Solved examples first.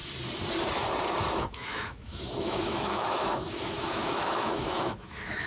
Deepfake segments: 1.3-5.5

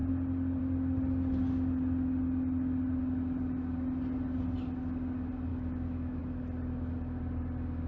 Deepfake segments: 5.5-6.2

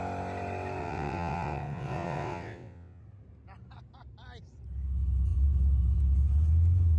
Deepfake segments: 0.8-3.0